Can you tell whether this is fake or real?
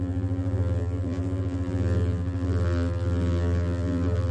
fake